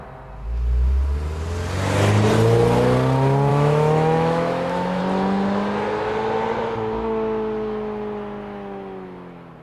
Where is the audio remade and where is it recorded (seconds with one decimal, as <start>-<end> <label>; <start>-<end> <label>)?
0.0-3.5 recorded; 3.5-5.0 remade; 5.0-9.6 recorded